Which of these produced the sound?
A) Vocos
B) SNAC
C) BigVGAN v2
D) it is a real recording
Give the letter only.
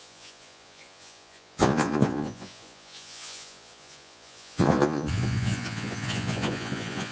A